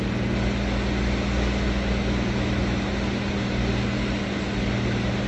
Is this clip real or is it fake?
real